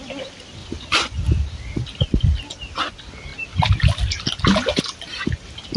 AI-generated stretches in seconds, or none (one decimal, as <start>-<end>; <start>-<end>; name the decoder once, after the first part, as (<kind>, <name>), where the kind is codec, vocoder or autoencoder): 0.6-1.2 (vocoder, Vocos)